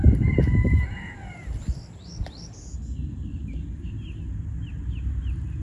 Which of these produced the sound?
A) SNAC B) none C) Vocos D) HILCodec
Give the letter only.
B